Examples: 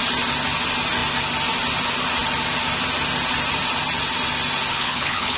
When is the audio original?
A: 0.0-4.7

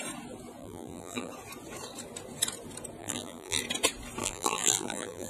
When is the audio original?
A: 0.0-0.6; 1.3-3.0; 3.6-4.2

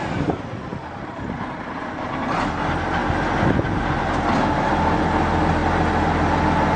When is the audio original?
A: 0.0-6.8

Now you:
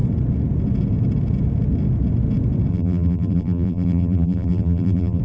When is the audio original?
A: 0.0-2.7

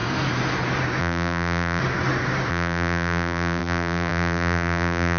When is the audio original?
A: 0.0-1.0; 1.8-2.5

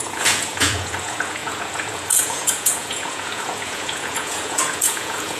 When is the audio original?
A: none